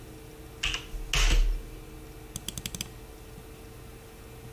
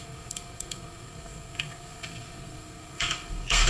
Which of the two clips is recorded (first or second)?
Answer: first